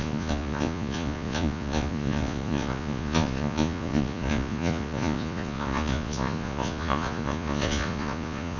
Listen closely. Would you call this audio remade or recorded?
remade